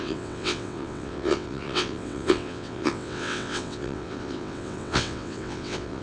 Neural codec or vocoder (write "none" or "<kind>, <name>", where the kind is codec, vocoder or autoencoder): vocoder, WaveNeXt